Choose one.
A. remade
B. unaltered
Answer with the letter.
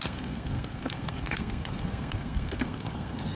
A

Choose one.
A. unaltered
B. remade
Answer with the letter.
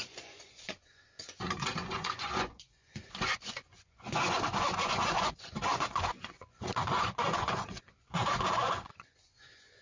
B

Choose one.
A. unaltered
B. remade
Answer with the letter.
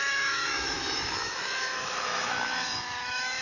B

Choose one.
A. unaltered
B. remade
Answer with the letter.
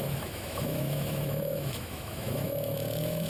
B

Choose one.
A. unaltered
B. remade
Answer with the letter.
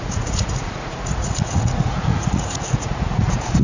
B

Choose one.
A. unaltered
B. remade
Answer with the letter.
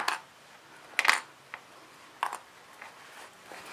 A